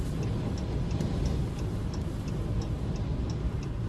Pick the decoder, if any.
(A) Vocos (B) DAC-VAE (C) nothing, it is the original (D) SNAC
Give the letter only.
C